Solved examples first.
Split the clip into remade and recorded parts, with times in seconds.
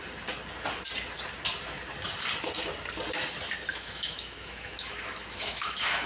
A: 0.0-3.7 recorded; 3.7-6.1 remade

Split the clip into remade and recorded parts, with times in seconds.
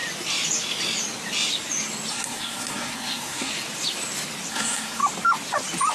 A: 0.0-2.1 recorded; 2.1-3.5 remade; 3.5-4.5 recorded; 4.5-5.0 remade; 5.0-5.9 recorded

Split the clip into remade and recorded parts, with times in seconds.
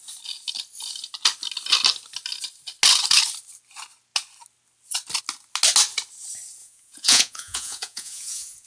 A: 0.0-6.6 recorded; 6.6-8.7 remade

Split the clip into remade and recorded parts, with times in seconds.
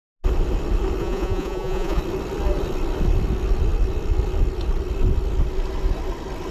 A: 0.0-1.0 recorded; 1.0-2.0 remade; 2.0-6.5 recorded